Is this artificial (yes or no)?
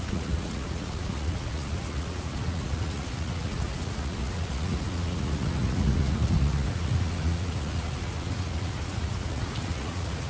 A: yes